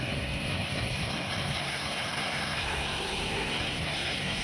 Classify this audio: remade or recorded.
remade